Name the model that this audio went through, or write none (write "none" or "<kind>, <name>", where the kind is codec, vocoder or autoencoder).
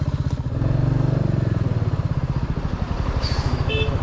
none